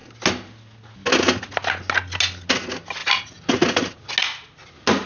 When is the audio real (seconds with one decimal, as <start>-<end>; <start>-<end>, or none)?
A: 0.0-5.1